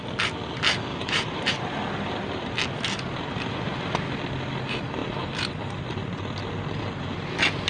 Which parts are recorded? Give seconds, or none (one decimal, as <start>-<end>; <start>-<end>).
0.0-0.9; 1.8-7.7